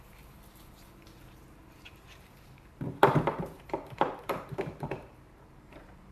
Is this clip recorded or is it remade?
remade